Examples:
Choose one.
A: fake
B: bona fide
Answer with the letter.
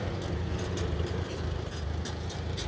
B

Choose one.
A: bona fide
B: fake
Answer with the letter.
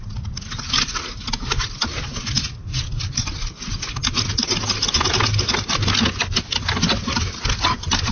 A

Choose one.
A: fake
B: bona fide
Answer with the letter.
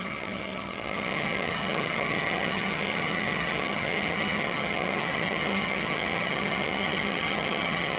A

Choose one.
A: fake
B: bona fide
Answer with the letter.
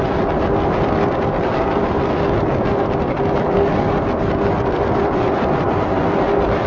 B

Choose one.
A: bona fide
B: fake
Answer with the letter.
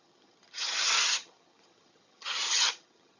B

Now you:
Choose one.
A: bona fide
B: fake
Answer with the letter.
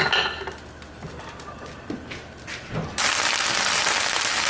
A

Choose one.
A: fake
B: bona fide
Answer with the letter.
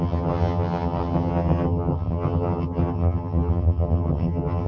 A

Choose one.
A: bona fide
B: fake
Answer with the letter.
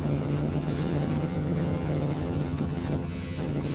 B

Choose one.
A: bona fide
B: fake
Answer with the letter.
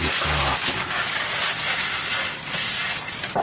A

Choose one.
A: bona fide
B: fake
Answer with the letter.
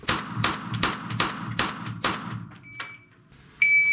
A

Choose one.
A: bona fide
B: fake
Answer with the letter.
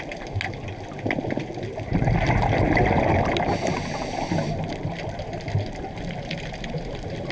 A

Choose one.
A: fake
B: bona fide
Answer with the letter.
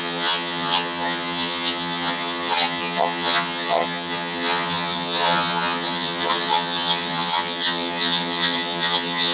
A